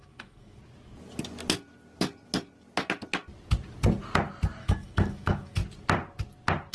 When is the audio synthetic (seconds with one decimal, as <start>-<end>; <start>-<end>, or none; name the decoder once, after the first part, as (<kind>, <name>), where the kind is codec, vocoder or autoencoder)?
0.0-0.6 (autoencoder, DAC-VAE); 4.6-5.6